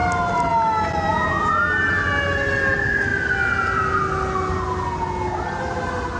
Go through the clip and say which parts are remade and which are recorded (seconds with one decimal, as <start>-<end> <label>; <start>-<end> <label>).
0.0-1.1 recorded; 1.1-1.6 remade; 1.6-6.2 recorded